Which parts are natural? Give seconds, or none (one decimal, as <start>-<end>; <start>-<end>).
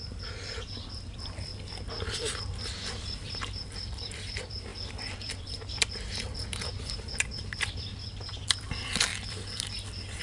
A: 1.5-3.9